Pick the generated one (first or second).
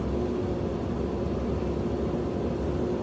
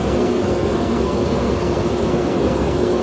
second